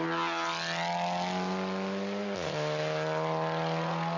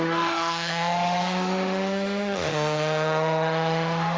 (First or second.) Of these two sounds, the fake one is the second